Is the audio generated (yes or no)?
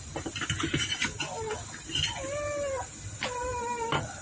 no